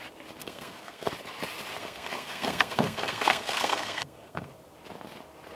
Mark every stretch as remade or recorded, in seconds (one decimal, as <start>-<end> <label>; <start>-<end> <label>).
0.0-0.4 recorded; 0.4-1.1 remade; 1.1-1.8 recorded; 1.8-4.5 remade; 4.5-5.6 recorded